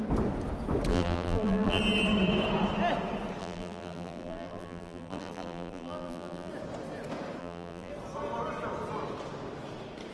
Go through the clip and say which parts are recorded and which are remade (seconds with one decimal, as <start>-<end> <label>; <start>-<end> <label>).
0.0-0.9 recorded; 0.9-1.8 remade; 1.8-3.4 recorded; 3.4-6.5 remade; 6.5-7.4 recorded; 7.4-7.9 remade; 7.9-10.1 recorded